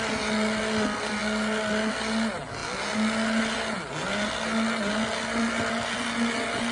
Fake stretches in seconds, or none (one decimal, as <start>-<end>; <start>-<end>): none